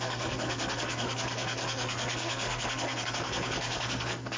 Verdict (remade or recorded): remade